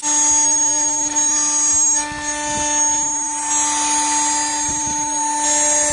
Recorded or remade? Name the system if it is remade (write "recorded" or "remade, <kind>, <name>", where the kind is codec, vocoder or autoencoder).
recorded